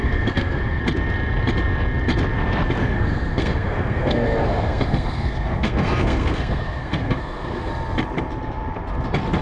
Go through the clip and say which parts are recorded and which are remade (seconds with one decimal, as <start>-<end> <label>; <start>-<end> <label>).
0.0-0.8 remade; 0.8-2.8 recorded; 2.8-7.7 remade; 7.7-9.4 recorded